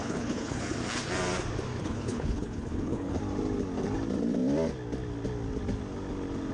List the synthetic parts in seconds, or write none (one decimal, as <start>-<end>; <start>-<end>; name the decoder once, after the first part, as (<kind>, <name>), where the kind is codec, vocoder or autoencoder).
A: 0.0-0.6 (codec, HILCodec); 1.8-3.2